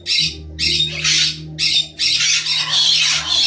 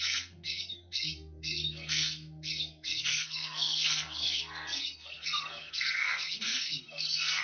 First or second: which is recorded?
first